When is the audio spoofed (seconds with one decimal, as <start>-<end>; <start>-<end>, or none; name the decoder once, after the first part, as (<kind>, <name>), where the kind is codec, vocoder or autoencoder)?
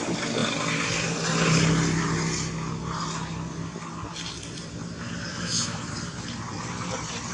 5.3-5.9 (autoencoder, DAC-VAE)